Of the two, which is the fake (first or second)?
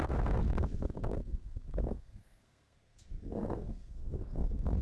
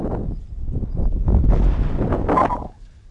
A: first